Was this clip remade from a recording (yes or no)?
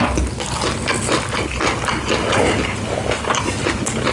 no